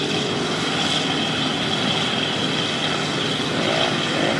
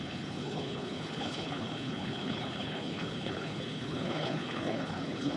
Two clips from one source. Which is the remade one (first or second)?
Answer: second